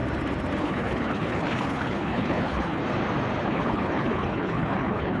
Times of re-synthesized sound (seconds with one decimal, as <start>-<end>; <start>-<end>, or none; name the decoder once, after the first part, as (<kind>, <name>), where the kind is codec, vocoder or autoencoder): 0.6-2.8 (codec, HILCodec); 3.4-5.2